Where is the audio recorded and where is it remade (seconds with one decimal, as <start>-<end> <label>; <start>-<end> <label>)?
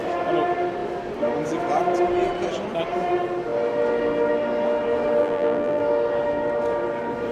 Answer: 0.0-5.2 recorded; 5.2-5.8 remade; 5.8-7.3 recorded